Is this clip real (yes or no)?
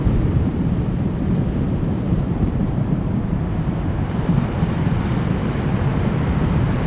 no